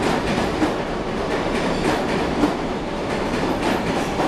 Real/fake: fake